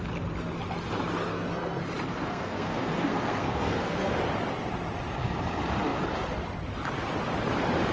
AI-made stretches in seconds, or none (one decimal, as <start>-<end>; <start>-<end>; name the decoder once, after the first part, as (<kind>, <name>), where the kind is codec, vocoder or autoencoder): 1.3-1.8 (codec, SNAC); 2.2-4.1

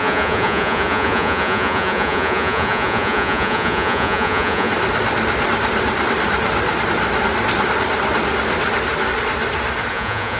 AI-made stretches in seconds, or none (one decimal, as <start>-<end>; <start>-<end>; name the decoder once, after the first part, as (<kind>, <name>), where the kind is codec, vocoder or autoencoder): 0.0-4.7 (vocoder, Vocos); 9.9-10.4

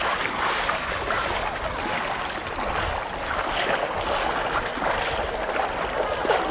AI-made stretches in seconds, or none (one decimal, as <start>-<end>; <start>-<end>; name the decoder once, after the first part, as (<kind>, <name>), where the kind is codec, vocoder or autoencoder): none

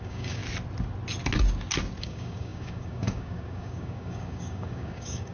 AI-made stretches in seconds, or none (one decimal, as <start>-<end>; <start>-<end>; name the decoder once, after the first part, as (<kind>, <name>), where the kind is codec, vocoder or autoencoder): 0.0-0.4 (codec, DAC); 2.0-5.3

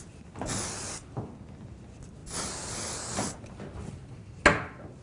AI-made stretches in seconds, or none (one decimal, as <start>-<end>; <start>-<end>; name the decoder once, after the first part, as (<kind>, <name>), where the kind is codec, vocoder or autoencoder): none

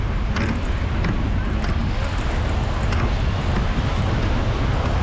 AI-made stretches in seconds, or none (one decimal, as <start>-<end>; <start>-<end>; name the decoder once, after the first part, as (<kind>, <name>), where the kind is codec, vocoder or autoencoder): none

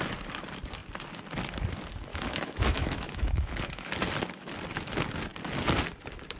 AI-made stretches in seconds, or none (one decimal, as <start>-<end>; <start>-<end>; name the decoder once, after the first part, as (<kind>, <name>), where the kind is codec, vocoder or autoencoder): 2.1-3.9 (autoencoder, DAC-VAE)

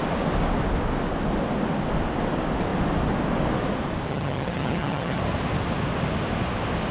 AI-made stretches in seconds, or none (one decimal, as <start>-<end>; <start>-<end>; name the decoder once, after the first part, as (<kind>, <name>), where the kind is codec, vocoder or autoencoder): 4.1-5.2 (vocoder, HiFi-GAN)